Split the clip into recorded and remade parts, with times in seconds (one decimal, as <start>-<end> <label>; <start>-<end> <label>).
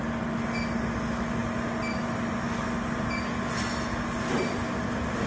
0.0-5.3 recorded